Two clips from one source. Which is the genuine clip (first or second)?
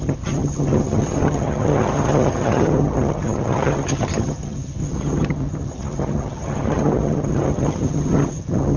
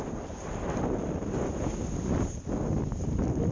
second